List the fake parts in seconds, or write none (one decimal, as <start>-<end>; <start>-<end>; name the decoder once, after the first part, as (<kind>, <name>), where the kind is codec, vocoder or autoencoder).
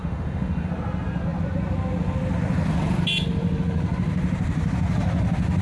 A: 0.0-0.7 (autoencoder, DAC-VAE)